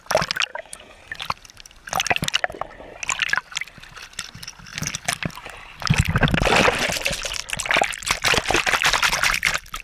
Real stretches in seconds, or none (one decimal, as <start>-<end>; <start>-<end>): 0.0-0.5; 1.0-9.8